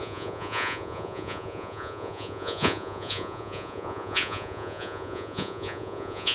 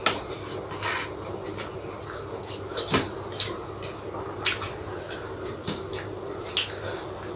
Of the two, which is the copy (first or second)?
first